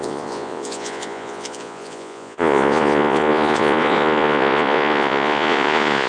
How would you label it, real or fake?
fake